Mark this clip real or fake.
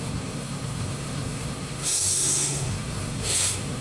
fake